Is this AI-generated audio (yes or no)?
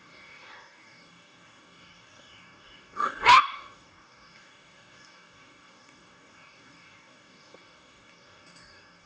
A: yes